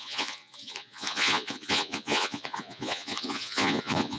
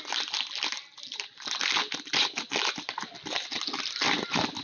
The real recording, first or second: second